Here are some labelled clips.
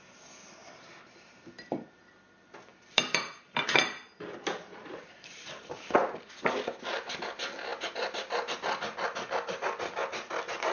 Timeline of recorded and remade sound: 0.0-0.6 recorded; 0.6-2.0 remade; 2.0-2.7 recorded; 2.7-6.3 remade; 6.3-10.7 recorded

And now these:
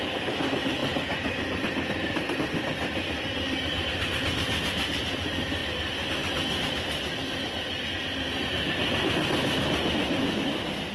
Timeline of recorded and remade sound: 0.0-10.9 recorded

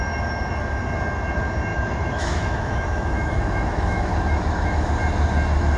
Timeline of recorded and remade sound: 0.0-1.7 recorded; 1.7-4.9 remade; 4.9-5.8 recorded

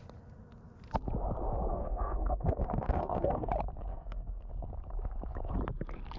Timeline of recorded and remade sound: 0.0-1.7 recorded; 1.7-3.5 remade; 3.5-3.9 recorded; 3.9-4.5 remade; 4.5-6.2 recorded